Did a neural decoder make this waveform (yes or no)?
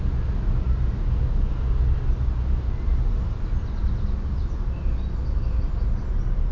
no